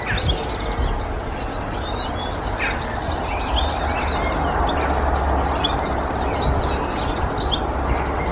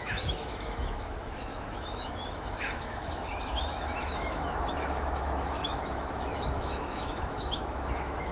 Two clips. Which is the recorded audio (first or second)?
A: first